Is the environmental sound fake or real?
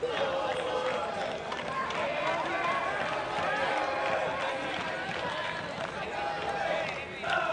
real